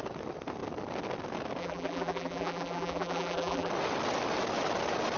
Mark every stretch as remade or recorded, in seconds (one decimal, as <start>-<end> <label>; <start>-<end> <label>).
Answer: 0.0-1.6 recorded; 1.6-3.7 remade; 3.7-5.2 recorded